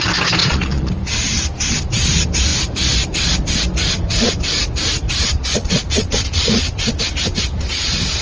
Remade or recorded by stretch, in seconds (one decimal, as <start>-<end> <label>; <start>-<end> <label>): 0.0-0.4 recorded; 0.4-0.9 remade; 0.9-5.6 recorded; 5.6-6.6 remade; 6.6-8.2 recorded

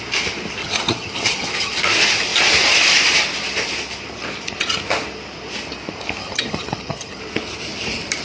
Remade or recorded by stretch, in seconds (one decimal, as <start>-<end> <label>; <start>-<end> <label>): 0.0-0.6 recorded; 0.6-1.8 remade; 1.8-6.2 recorded; 6.2-7.2 remade; 7.2-8.2 recorded

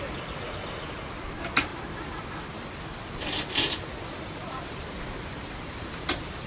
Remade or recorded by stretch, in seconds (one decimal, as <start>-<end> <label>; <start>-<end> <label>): 0.0-6.5 recorded

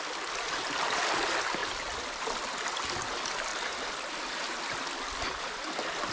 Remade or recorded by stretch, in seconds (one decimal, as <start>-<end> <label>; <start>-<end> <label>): 0.0-1.6 recorded; 1.6-2.2 remade; 2.2-6.1 recorded